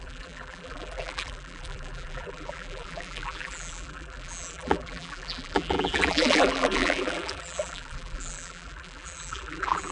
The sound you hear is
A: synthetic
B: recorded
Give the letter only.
A